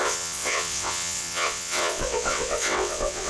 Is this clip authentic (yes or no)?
no